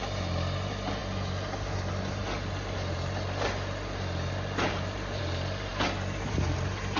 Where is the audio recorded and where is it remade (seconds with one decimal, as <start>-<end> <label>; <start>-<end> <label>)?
0.0-7.0 recorded